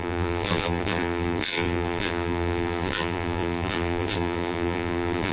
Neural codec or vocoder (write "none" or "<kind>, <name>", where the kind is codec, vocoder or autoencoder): vocoder, BigVGAN v2